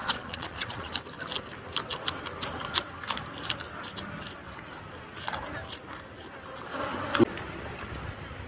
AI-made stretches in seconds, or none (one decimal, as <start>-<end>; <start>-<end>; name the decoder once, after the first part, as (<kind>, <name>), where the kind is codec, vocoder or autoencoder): 0.0-0.9 (vocoder, Vocos)